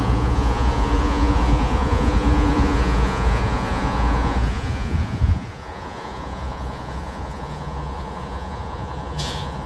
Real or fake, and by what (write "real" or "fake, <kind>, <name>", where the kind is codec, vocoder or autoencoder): fake, vocoder, Vocos